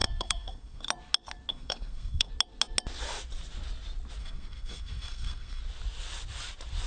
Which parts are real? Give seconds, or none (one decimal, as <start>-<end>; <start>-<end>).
0.8-1.5; 2.3-4.2; 5.6-6.9